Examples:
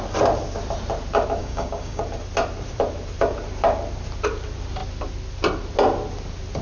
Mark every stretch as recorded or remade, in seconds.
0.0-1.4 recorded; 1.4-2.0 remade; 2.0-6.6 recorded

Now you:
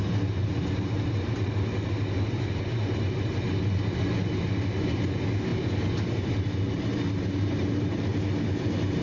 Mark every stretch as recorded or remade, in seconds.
0.0-9.0 recorded

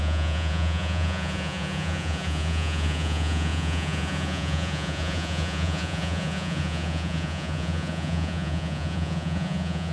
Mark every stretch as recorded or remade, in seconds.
0.0-9.9 remade